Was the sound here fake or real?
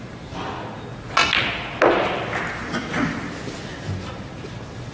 real